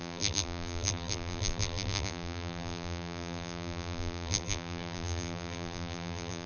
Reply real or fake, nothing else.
fake